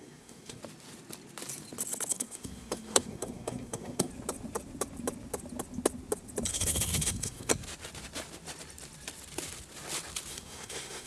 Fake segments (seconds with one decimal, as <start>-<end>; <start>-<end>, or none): 0.0-0.6; 2.1-4.1; 6.5-7.5; 10.3-11.1